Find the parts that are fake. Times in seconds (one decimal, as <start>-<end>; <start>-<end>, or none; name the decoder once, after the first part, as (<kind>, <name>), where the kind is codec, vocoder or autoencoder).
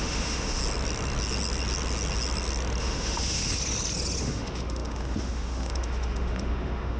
0.0-0.6 (autoencoder, DAC-VAE); 2.8-3.5; 4.2-7.0